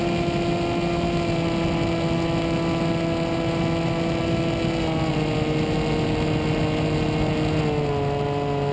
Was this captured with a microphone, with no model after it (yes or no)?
yes